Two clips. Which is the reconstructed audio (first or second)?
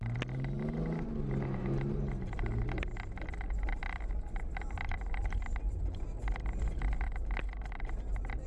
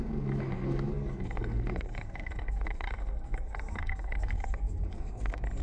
second